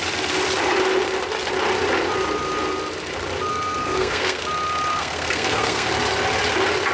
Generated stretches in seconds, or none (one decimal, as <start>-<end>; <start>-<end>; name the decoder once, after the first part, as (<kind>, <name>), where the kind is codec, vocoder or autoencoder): 3.5-4.4 (codec, SNAC); 4.9-5.9